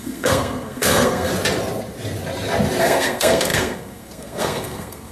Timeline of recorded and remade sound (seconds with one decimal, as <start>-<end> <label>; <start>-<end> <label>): 0.0-1.3 remade; 1.3-2.8 recorded; 2.8-5.1 remade